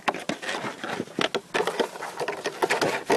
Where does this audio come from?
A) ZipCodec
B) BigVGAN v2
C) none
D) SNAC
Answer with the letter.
C